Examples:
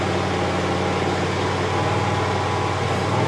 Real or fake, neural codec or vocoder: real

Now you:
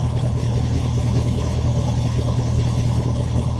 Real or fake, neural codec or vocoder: fake, codec, HILCodec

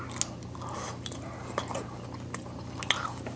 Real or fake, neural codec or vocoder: real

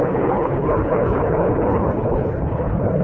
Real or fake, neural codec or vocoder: fake, codec, HILCodec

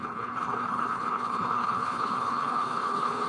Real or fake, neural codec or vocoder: fake, codec, HILCodec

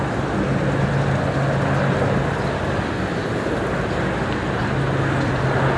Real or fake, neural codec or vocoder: real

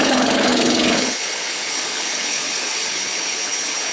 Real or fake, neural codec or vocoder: fake, codec, HILCodec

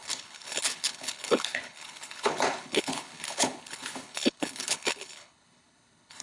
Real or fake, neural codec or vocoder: fake, codec, HILCodec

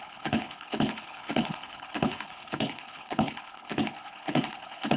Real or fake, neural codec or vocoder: fake, codec, HILCodec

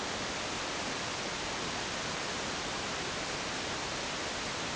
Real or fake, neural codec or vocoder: real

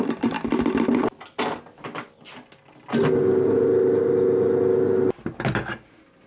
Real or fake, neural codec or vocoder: real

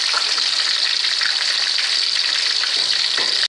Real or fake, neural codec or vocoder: real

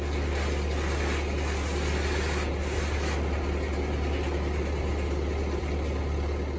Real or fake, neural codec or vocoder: real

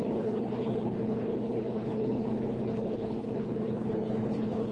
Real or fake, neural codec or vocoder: fake, codec, HILCodec